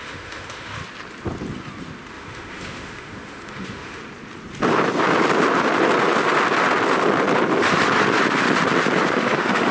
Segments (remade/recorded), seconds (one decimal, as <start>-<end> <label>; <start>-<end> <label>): 0.0-0.8 remade; 0.8-2.1 recorded; 2.1-4.0 remade; 4.0-9.0 recorded; 9.0-9.7 remade

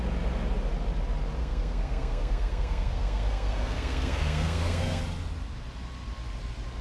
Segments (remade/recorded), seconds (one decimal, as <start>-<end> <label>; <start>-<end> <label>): 0.0-1.4 recorded; 1.4-5.0 remade; 5.0-6.8 recorded

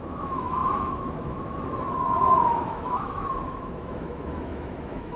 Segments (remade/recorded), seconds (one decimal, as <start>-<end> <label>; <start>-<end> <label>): 0.0-5.2 remade